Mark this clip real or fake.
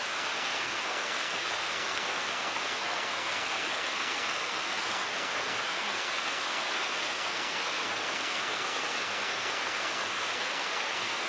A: fake